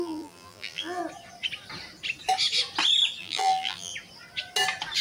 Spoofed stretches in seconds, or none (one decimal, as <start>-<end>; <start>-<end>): 0.0-1.0; 3.2-3.9